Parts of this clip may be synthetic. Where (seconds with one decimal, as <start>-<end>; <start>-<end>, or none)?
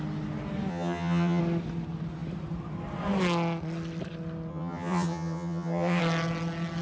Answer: 0.7-1.4; 4.5-6.0